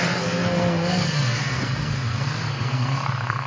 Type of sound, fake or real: fake